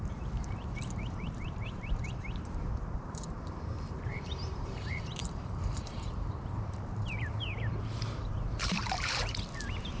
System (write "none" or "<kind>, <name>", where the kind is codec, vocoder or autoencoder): vocoder, BigVGAN v2